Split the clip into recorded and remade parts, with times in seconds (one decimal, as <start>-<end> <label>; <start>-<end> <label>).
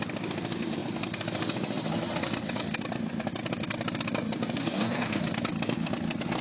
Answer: 0.0-4.6 recorded; 4.6-5.2 remade; 5.2-6.4 recorded